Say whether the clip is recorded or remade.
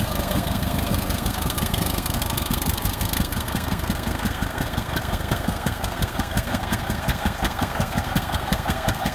remade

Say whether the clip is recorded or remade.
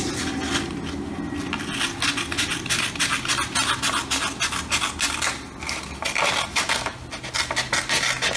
recorded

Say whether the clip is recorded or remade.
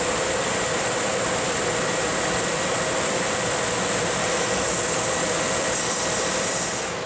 remade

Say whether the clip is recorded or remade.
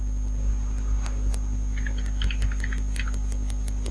recorded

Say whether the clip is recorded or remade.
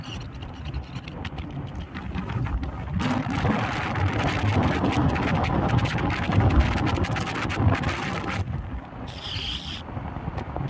recorded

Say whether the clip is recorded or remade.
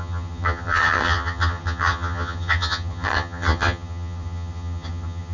remade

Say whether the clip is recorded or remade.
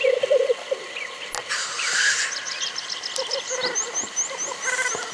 recorded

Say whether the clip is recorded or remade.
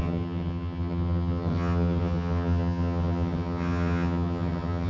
remade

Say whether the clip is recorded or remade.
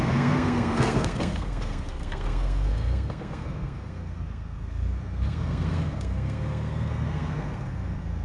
remade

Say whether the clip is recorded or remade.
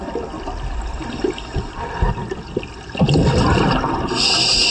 recorded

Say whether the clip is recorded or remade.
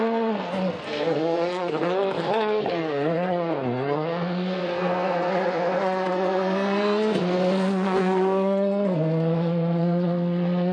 remade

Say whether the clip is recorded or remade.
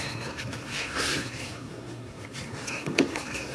remade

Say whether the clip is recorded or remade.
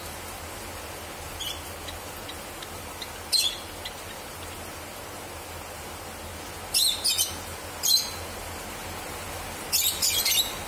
recorded